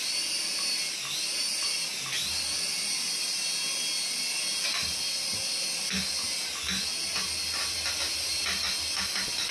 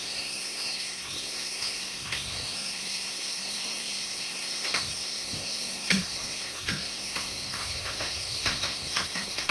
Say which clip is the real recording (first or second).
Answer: first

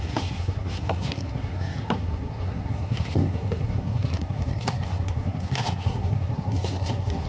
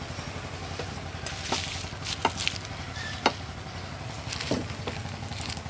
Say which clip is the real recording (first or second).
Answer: second